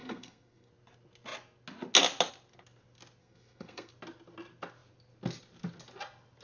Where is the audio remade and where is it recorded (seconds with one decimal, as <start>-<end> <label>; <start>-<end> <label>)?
0.0-0.7 remade; 0.7-3.2 recorded; 3.2-3.9 remade; 3.9-6.4 recorded

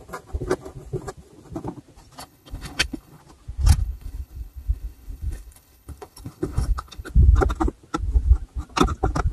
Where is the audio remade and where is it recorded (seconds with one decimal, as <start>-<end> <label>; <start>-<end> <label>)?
0.0-2.2 recorded; 2.2-3.2 remade; 3.2-3.8 recorded; 3.8-7.1 remade; 7.1-9.3 recorded